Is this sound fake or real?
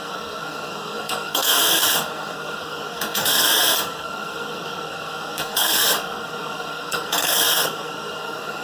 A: fake